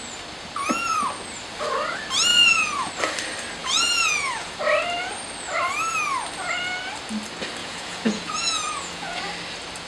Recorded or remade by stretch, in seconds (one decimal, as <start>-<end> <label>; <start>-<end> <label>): 0.0-2.3 recorded; 2.3-2.9 remade; 2.9-3.6 recorded; 3.6-4.6 remade; 4.6-7.6 recorded; 7.6-9.2 remade; 9.2-9.9 recorded